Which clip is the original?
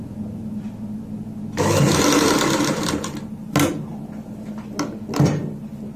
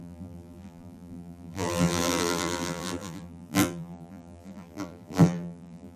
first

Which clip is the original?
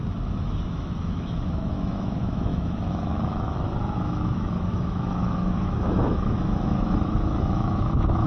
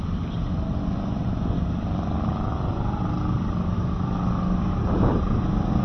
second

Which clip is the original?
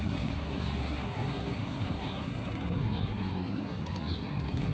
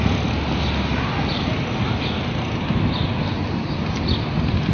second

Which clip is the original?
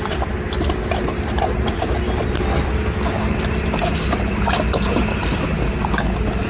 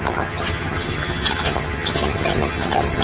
first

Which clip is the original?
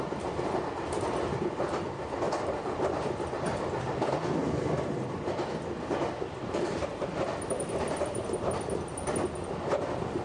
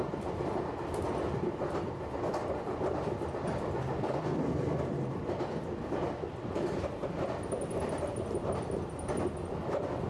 second